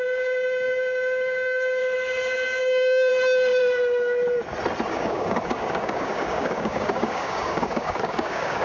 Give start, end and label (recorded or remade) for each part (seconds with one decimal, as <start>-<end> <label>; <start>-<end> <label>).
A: 0.0-1.8 remade; 1.8-2.6 recorded; 2.6-3.1 remade; 3.1-4.9 recorded; 4.9-8.6 remade